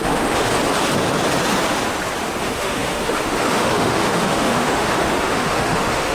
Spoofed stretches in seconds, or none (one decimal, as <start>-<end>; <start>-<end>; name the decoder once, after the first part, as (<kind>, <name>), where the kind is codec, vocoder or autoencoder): 0.0-0.5 (autoencoder, DAC-VAE); 2.4-6.1